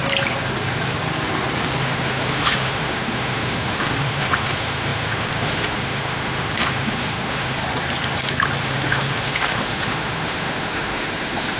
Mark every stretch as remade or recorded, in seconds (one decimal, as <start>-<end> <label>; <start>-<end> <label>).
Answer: 0.0-1.8 recorded; 1.8-7.6 remade; 7.6-8.6 recorded; 8.6-11.6 remade